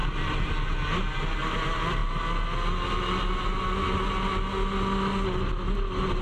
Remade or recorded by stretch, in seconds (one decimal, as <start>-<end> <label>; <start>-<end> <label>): 0.0-0.5 remade; 0.5-6.2 recorded